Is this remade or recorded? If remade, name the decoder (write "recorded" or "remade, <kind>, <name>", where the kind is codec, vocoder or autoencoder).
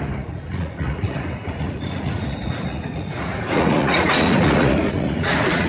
remade, vocoder, Vocos